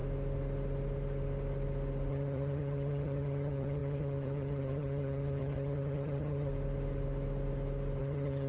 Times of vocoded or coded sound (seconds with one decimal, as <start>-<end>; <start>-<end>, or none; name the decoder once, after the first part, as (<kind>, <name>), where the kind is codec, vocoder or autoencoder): 2.1-6.5 (vocoder, HiFi-GAN); 8.0-8.5